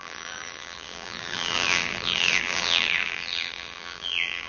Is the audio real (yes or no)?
no